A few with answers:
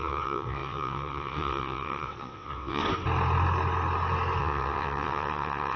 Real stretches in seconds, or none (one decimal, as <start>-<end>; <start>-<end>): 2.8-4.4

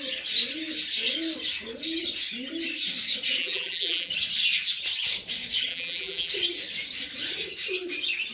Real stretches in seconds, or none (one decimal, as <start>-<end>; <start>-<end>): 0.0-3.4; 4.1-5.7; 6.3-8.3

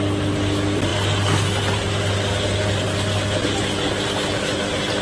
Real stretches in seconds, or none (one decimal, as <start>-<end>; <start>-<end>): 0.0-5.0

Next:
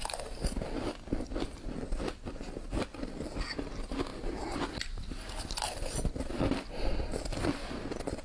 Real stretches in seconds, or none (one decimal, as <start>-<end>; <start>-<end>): 0.0-8.2